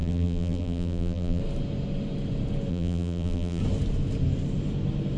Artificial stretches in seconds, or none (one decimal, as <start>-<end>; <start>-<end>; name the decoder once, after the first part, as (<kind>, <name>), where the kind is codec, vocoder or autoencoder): 0.0-1.4 (vocoder, BigVGAN v2); 2.7-3.6